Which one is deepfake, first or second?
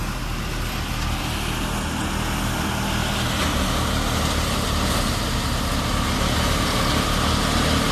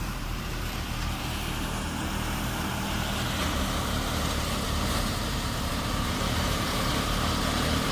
second